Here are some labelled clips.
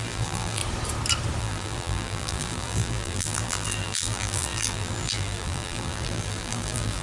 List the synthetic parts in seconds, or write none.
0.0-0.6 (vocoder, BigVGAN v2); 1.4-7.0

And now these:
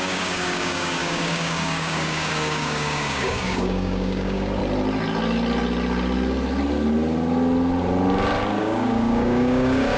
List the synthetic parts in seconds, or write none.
0.0-4.6 (codec, DAC); 8.6-10.0

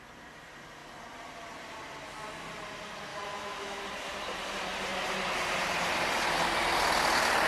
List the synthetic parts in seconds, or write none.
3.1-3.8 (autoencoder, DAC-VAE)

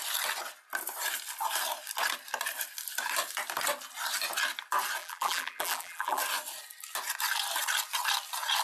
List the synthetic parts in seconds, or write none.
5.0-6.2 (vocoder, BigVGAN v2)

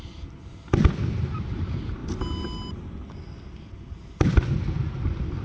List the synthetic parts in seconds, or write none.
none

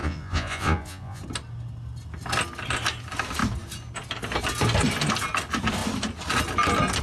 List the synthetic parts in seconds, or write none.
0.0-1.2 (vocoder, Vocos)

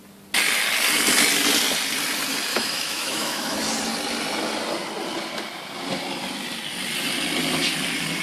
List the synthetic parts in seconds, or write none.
2.5-3.6 (autoencoder, DAC-VAE)